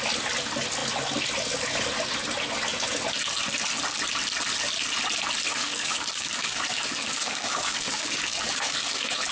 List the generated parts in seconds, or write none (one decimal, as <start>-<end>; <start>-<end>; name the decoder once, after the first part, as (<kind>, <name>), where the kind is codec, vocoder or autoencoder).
5.5-9.3 (codec, DAC)